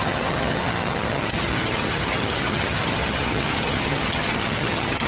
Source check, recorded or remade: remade